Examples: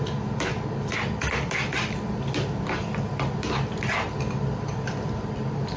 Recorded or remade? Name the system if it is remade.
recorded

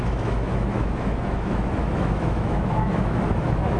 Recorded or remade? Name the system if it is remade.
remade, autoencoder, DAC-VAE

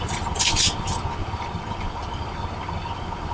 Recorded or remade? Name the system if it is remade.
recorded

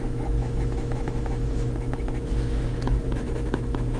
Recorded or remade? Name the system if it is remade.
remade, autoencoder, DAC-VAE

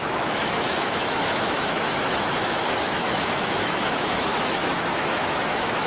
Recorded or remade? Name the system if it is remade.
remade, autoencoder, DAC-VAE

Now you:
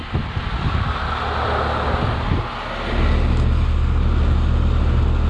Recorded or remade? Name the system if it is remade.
recorded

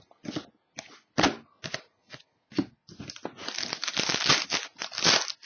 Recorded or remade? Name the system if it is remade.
recorded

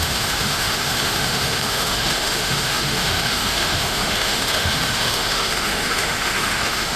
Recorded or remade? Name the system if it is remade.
remade, autoencoder, DAC-VAE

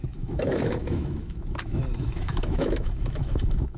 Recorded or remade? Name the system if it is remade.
remade, autoencoder, DAC-VAE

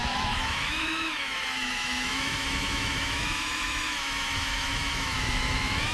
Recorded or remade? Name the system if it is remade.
remade, autoencoder, DAC-VAE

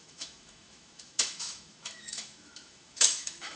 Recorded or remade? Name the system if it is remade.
remade, autoencoder, DAC-VAE